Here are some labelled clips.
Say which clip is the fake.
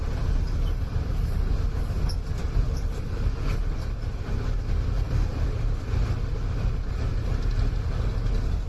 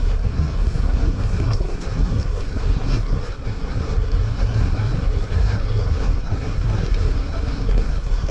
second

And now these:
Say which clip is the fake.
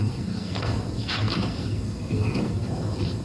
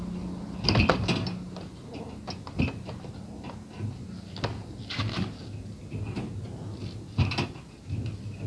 first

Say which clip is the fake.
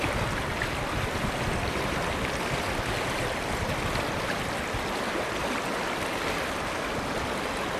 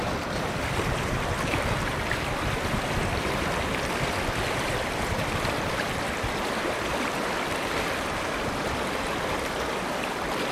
second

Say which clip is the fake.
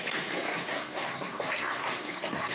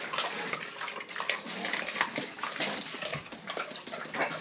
first